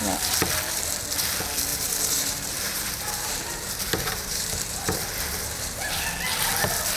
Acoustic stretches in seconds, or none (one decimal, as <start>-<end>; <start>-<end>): 0.0-1.7; 5.9-7.0